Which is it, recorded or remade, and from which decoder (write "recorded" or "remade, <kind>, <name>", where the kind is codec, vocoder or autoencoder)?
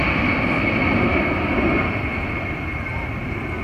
recorded